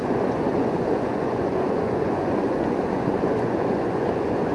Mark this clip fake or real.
fake